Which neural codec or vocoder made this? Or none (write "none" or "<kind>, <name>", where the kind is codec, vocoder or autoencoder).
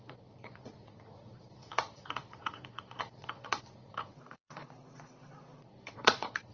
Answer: vocoder, Vocos